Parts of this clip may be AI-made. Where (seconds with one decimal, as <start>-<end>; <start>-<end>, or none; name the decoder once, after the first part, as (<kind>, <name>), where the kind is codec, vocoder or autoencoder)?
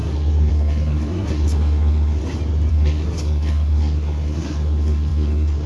0.0-2.2 (codec, SNAC); 2.7-5.7